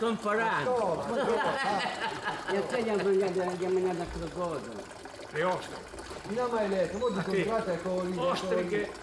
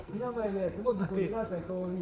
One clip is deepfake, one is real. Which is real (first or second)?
first